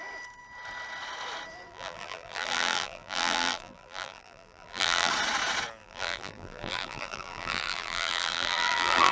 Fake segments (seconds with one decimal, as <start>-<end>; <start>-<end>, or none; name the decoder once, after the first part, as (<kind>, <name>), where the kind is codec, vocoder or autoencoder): 1.7-5.1 (vocoder, BigVGAN v2); 5.8-9.1